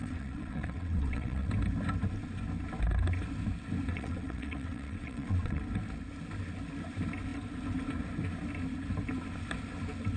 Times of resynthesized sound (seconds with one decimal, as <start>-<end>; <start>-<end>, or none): 0.0-1.5; 3.9-5.6